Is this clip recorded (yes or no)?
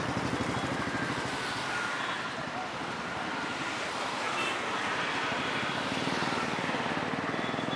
yes